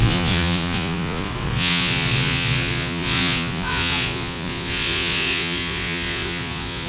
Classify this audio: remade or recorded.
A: remade